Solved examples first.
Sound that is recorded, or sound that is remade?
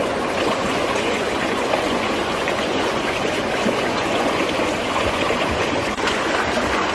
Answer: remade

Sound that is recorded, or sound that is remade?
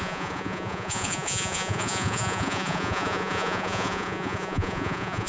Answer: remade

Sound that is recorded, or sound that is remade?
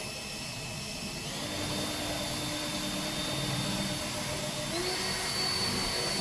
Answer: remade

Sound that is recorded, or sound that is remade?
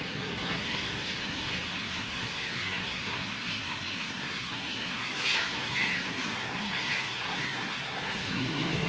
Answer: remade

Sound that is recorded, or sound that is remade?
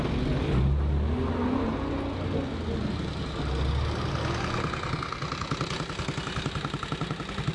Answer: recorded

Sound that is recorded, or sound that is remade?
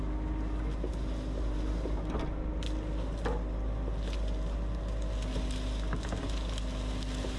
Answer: recorded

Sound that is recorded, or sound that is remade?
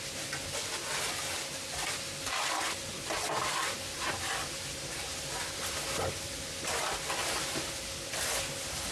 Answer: recorded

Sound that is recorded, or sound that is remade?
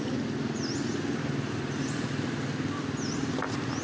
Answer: recorded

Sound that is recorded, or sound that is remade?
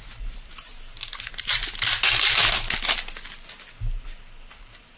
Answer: recorded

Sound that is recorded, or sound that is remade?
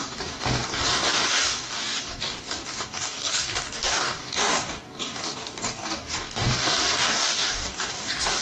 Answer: remade